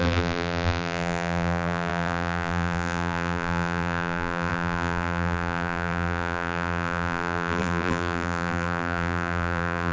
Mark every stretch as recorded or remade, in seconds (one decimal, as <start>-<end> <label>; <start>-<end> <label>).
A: 0.0-9.9 remade